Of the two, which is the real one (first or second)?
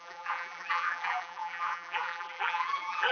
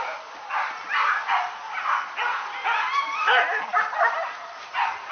second